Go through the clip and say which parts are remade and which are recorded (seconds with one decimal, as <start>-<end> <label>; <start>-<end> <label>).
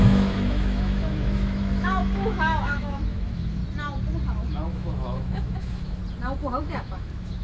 0.0-3.6 remade; 3.6-4.5 recorded; 4.5-6.0 remade; 6.0-6.6 recorded; 6.6-7.4 remade